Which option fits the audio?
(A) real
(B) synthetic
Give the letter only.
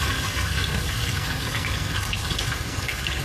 B